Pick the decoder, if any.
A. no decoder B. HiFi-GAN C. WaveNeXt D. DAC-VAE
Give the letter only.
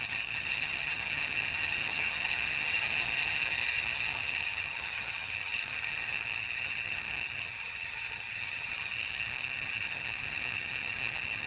B